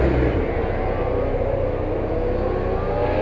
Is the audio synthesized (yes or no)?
no